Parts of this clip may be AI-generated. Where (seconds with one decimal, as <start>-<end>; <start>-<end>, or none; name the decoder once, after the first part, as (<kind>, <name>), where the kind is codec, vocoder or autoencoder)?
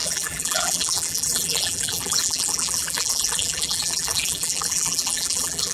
0.0-5.7 (vocoder, BigVGAN v2)